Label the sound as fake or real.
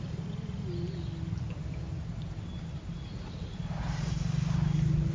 real